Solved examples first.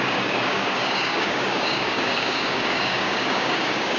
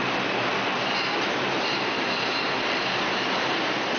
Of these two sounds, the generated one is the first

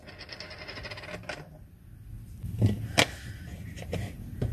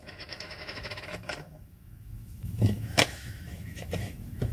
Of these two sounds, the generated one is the second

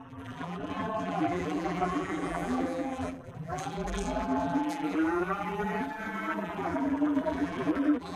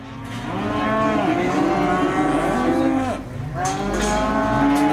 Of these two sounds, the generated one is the first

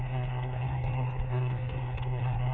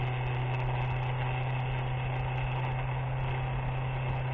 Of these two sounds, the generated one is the first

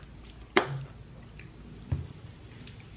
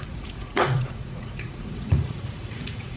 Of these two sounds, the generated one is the second